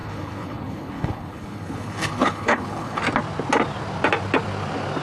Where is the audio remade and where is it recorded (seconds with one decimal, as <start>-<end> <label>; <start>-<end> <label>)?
0.0-3.0 remade; 3.0-5.0 recorded